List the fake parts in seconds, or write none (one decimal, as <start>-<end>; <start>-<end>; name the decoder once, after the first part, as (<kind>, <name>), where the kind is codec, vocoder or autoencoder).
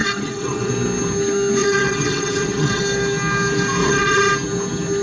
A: 0.0-0.7 (vocoder, WaveNeXt); 1.6-2.8; 3.8-4.3